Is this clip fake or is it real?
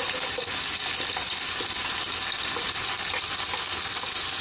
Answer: real